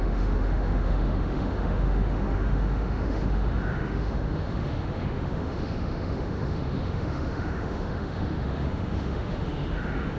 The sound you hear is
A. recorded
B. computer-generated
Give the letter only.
B